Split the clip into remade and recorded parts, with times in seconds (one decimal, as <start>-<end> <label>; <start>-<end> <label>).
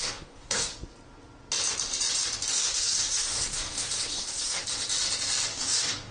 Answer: 0.0-0.7 remade; 0.7-2.5 recorded; 2.5-4.6 remade; 4.6-5.5 recorded; 5.5-6.1 remade